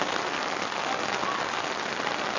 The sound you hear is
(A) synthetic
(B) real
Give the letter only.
B